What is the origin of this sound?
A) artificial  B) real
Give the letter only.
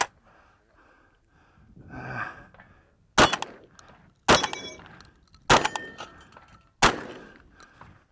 B